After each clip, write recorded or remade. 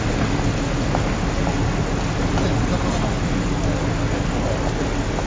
recorded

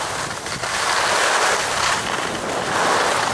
recorded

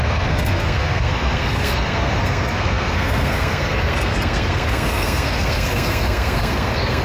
remade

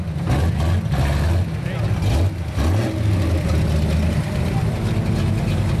recorded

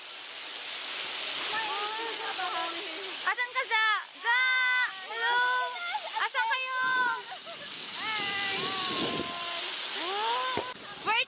recorded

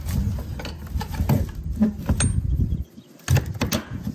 recorded